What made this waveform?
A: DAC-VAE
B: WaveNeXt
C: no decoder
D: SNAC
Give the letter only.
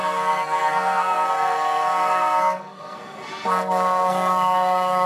D